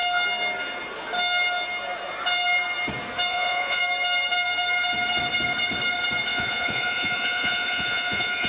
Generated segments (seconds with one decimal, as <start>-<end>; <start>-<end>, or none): 3.3-3.8; 6.3-8.5